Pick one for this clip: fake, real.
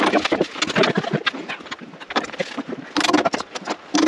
real